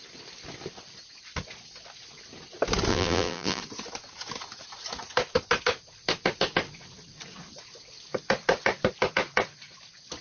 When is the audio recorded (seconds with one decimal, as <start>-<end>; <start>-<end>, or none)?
0.0-2.9; 3.6-10.2